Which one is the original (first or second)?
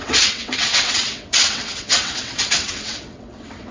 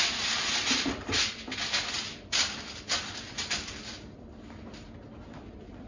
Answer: second